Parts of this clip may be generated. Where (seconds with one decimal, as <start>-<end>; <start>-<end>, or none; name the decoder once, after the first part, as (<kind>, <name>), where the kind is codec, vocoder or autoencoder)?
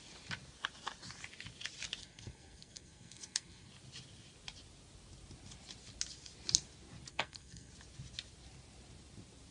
2.0-3.7 (codec, SNAC); 7.1-7.7